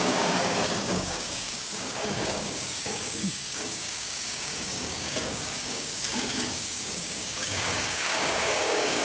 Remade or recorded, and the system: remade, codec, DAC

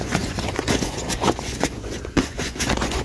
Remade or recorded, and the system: remade, vocoder, Vocos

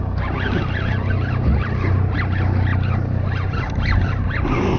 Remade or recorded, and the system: recorded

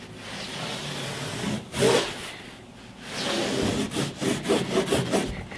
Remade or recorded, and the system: recorded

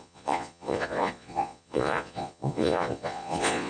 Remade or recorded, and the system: remade, vocoder, Vocos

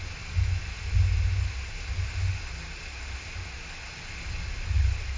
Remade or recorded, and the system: recorded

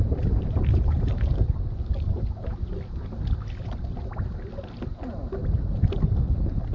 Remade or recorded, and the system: recorded